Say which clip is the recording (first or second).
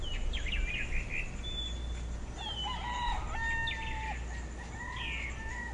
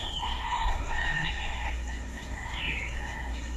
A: first